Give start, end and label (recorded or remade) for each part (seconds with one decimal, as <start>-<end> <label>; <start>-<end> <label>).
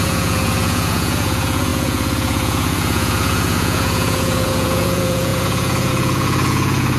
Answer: 0.0-7.0 remade